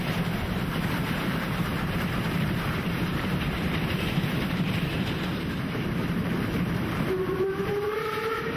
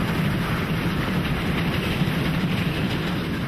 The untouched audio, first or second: second